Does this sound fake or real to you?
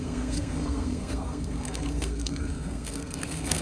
fake